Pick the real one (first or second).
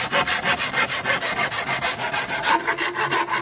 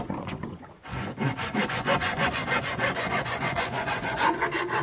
first